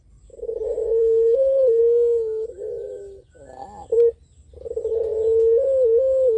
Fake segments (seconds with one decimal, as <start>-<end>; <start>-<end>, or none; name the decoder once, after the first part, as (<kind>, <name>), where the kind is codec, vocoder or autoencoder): 1.0-1.8 (codec, HILCodec)